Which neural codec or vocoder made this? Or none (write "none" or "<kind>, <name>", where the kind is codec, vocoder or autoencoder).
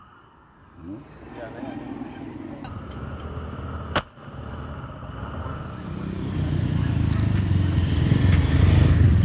none